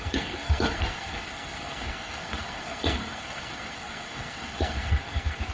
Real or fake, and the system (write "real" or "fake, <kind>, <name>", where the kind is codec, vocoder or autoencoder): fake, codec, SNAC